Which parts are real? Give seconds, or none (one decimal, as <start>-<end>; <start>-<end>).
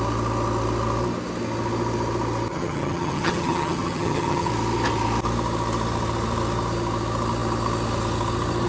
0.0-2.5; 4.5-8.7